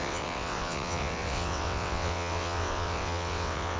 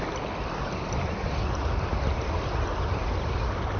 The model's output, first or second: first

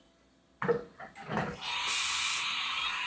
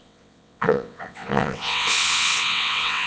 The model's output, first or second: second